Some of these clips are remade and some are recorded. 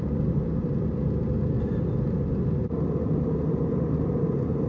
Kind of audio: recorded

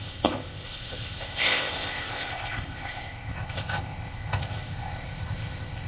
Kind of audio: remade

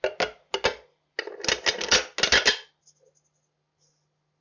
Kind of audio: recorded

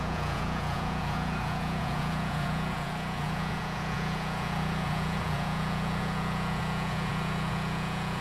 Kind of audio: remade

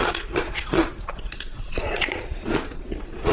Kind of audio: remade